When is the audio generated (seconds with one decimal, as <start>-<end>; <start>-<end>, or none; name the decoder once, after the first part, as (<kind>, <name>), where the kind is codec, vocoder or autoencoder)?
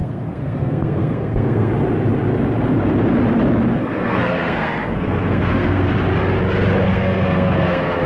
0.0-1.7 (codec, SNAC); 3.8-5.9; 6.9-8.1